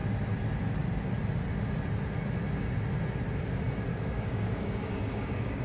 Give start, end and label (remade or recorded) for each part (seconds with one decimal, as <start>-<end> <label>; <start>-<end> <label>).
0.0-3.9 recorded; 3.9-5.6 remade